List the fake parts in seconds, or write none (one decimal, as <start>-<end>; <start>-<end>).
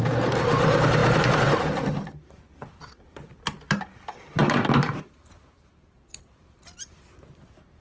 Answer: 0.0-7.8